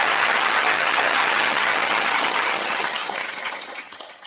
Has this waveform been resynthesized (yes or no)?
yes